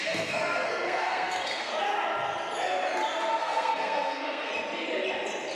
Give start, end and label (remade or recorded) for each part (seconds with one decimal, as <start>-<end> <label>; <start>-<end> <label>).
0.0-1.7 remade; 1.7-3.4 recorded; 3.4-4.5 remade; 4.5-5.6 recorded